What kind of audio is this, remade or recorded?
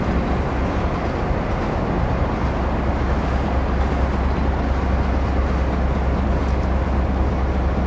recorded